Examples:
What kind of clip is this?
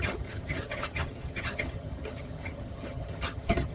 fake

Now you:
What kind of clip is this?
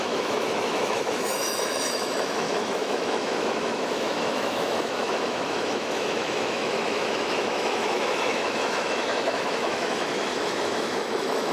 fake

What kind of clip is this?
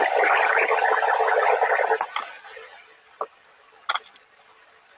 real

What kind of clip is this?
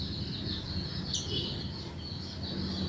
real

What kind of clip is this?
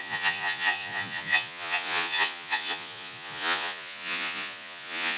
fake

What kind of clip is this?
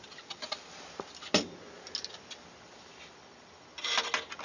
real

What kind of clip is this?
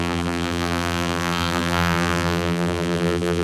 fake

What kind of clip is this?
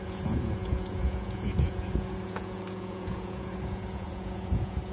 fake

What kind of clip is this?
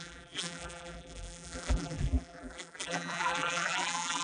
fake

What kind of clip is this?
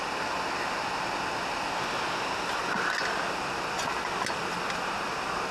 real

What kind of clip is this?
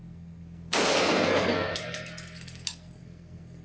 fake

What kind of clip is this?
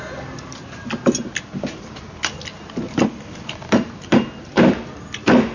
real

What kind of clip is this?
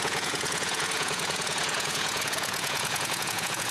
fake